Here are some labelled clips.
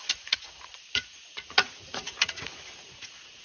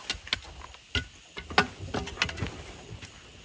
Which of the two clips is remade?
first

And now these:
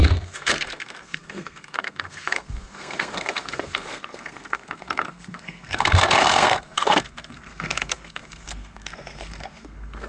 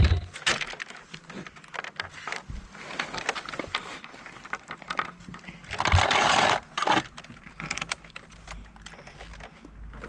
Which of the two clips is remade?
first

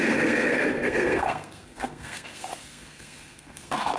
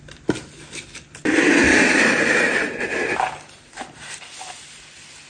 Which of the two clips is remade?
first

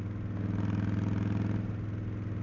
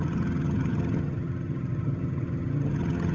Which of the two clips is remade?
second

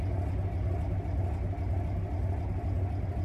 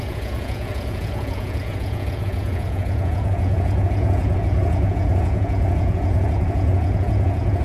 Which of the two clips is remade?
second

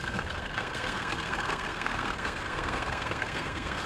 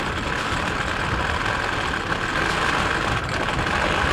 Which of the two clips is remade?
first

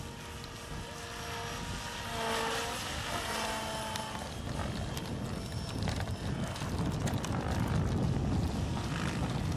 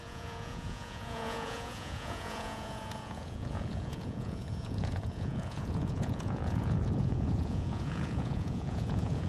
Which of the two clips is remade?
second